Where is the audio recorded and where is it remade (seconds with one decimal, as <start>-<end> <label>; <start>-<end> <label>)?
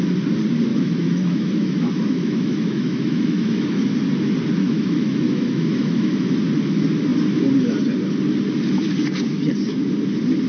0.0-0.7 recorded; 0.7-3.8 remade; 3.8-4.6 recorded; 4.6-6.4 remade; 6.4-10.5 recorded